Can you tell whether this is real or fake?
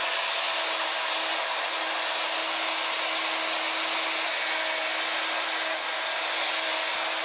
real